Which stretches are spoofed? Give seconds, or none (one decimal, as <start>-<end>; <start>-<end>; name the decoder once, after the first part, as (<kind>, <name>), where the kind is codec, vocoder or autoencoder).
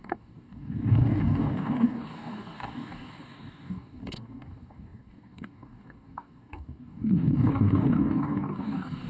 0.0-9.1 (codec, DAC)